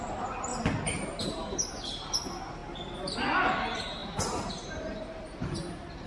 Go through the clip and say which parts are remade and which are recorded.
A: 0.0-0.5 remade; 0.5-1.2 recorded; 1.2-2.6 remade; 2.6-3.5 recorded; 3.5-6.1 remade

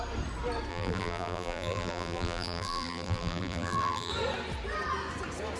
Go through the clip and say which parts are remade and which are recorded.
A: 0.0-0.7 recorded; 0.7-4.1 remade; 4.1-5.6 recorded

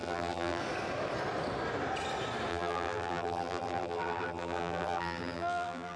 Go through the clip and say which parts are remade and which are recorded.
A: 0.0-0.6 remade; 0.6-2.5 recorded; 2.5-6.0 remade

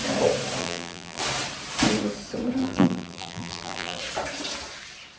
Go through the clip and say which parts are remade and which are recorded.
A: 0.0-0.6 recorded; 0.6-1.2 remade; 1.2-2.6 recorded; 2.6-4.0 remade; 4.0-5.2 recorded

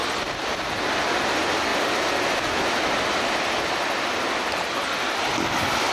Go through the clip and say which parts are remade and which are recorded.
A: 0.0-0.7 remade; 0.7-5.9 recorded

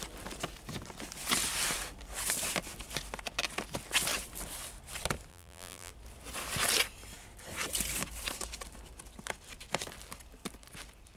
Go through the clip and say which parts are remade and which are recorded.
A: 0.0-5.3 recorded; 5.3-5.9 remade; 5.9-11.2 recorded

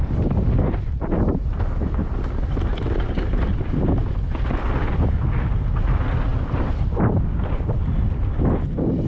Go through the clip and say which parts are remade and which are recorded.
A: 0.0-6.3 recorded; 6.3-7.0 remade; 7.0-9.1 recorded